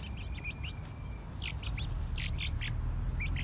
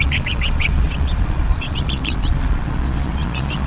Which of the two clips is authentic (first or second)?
first